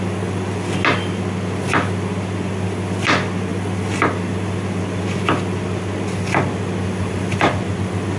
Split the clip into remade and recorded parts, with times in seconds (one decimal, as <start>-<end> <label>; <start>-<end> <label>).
0.0-8.2 recorded